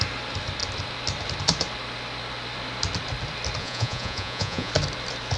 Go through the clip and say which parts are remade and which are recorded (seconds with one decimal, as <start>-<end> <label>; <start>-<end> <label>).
0.0-3.6 recorded; 3.6-4.7 remade; 4.7-5.4 recorded